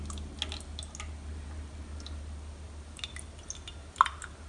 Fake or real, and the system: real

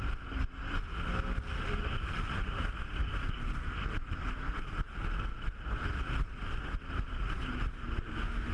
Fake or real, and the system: real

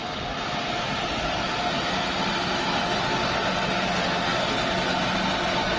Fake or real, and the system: real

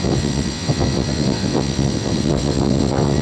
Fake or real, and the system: fake, vocoder, WaveNeXt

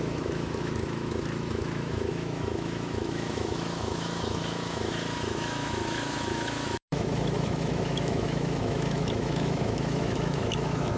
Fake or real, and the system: fake, autoencoder, DAC-VAE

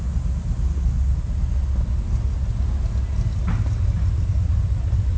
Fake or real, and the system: real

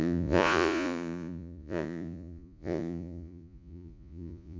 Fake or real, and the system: fake, vocoder, Vocos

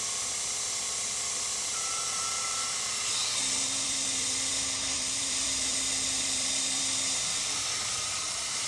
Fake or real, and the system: fake, vocoder, BigVGAN v2